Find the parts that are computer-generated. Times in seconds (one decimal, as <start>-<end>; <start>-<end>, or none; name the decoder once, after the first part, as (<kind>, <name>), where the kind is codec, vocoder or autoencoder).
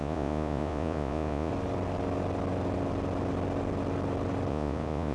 0.0-1.5 (vocoder, Vocos); 4.5-5.1